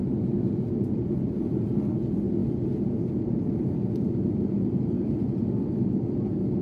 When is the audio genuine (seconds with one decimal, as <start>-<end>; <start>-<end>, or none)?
0.0-6.6

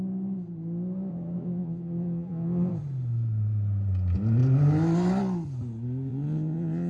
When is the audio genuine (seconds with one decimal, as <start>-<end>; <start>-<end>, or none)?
0.0-1.1; 2.7-6.1

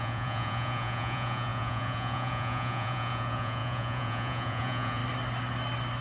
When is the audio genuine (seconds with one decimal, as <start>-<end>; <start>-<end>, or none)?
5.0-6.0

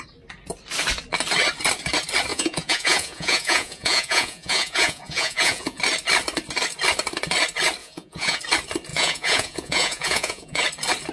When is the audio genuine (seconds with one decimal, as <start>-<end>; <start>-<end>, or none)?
0.0-2.3; 5.8-7.8; 8.4-8.9; 10.6-11.1

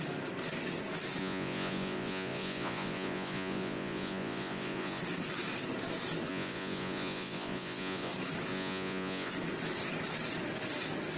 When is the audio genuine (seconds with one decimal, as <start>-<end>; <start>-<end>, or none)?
0.0-1.2; 5.0-6.3; 8.1-8.5; 9.3-11.2

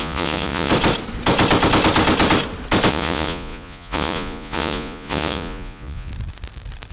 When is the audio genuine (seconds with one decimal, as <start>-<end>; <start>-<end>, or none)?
0.7-2.9; 6.1-6.9